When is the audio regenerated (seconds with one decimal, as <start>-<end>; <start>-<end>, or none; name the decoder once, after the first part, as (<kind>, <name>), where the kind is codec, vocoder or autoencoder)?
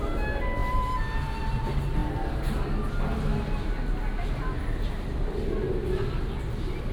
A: none